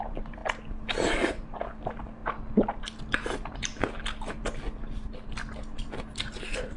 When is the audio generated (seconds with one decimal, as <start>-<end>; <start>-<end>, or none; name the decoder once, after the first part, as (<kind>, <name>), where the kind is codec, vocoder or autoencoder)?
0.0-0.4 (vocoder, BigVGAN v2); 1.3-2.2; 6.3-6.8